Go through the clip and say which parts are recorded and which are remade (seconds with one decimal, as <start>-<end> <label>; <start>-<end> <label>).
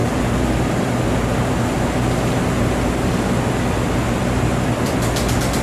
0.0-5.6 recorded